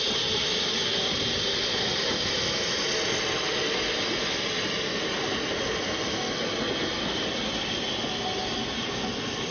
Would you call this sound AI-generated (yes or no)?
no